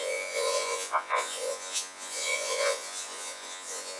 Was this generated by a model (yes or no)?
yes